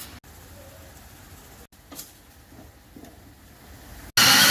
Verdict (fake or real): real